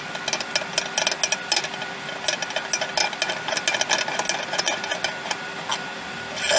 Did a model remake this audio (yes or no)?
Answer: no